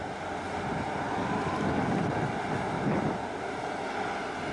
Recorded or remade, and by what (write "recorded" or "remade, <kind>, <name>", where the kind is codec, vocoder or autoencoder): recorded